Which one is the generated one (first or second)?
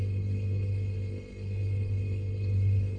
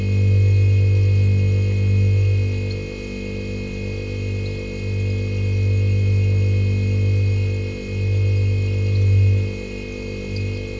first